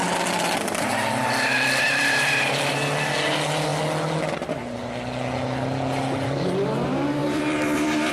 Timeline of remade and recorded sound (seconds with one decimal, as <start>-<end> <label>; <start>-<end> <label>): 0.0-2.8 remade; 2.8-7.2 recorded; 7.2-8.1 remade